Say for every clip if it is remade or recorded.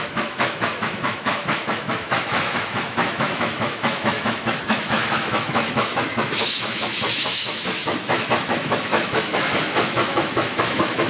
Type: remade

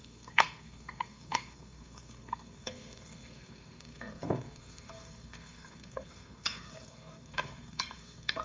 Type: remade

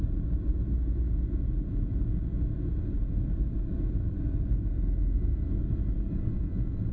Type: recorded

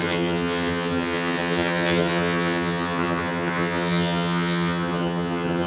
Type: remade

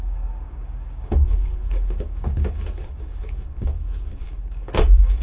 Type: remade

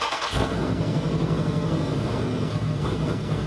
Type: remade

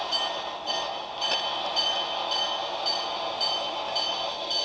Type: recorded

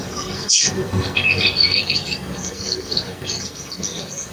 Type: remade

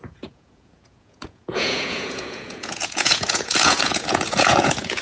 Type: remade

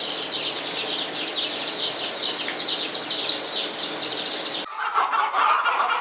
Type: recorded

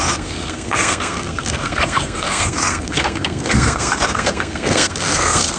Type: remade